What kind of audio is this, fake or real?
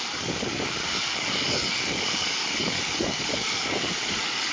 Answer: fake